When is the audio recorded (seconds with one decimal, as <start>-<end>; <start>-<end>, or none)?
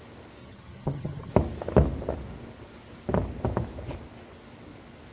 0.0-0.4; 1.3-5.1